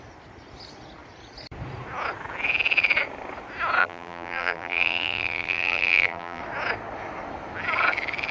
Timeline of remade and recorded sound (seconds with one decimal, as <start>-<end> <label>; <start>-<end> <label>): 0.0-3.8 recorded; 3.8-6.4 remade; 6.4-8.3 recorded